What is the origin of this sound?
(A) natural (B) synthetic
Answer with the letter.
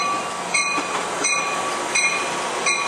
A